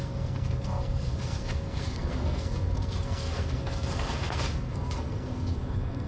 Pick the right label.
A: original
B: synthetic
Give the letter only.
B